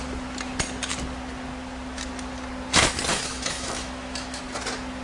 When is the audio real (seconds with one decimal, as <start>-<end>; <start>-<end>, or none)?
0.0-3.1; 4.4-5.0